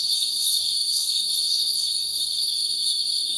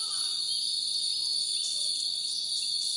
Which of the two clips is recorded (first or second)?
second